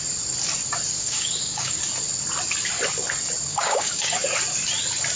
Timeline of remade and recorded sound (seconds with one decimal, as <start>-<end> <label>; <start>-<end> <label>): 0.0-0.9 recorded; 0.9-1.8 remade; 1.8-3.5 recorded; 3.5-4.2 remade; 4.2-5.2 recorded